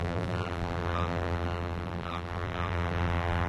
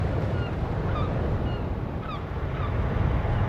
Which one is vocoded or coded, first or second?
first